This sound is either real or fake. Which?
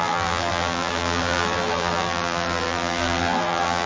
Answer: fake